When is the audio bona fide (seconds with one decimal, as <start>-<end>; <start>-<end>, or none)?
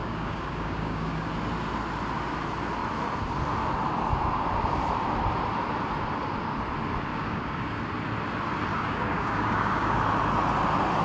1.3-7.1; 7.8-8.7; 10.0-11.0